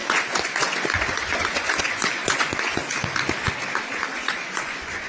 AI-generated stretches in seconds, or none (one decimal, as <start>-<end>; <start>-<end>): 0.0-2.8; 4.1-5.1